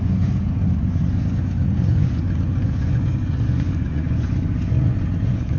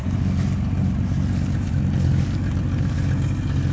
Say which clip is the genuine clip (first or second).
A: second